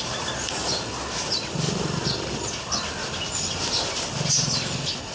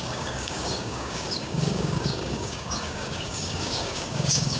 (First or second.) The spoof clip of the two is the second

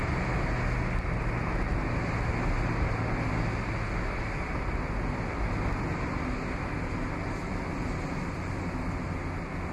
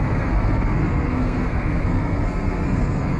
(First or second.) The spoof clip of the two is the second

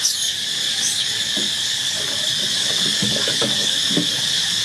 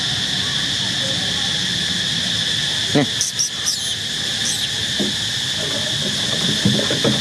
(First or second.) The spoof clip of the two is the first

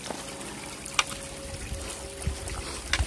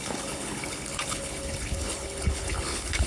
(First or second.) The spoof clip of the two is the second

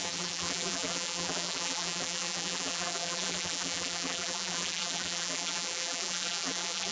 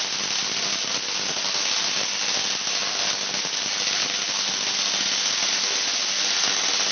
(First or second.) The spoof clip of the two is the first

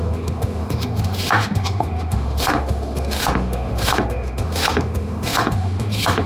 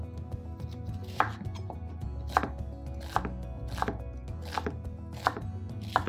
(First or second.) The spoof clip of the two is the first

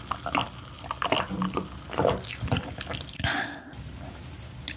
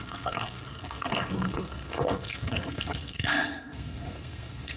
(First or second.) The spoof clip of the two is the second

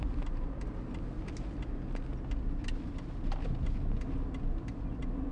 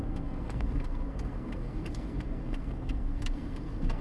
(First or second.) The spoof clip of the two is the second